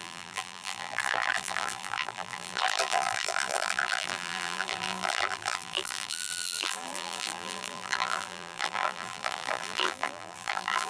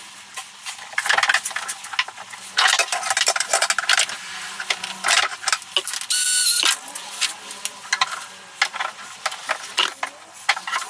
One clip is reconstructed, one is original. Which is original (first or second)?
second